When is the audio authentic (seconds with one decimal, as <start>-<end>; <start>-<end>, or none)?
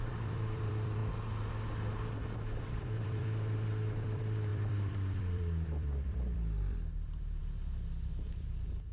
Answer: 1.0-2.6; 7.4-8.1